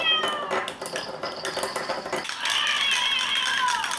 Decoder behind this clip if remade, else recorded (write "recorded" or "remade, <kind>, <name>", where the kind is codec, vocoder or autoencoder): recorded